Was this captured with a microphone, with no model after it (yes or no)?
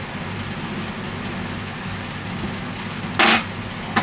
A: yes